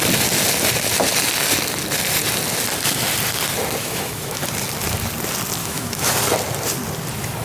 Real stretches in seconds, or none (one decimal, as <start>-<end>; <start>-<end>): 0.0-3.8; 4.4-5.6; 6.1-7.4